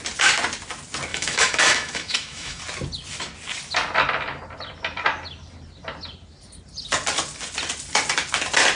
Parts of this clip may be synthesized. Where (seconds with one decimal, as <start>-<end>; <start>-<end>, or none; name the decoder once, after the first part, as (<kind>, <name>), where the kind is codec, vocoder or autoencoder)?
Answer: 1.1-2.6 (autoencoder, DAC-VAE)